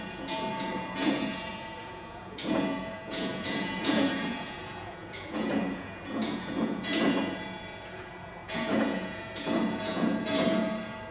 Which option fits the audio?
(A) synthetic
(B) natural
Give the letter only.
A